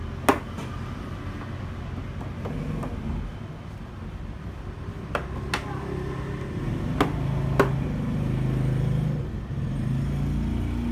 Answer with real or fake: real